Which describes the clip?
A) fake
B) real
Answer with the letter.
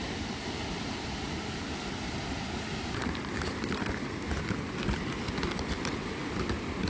B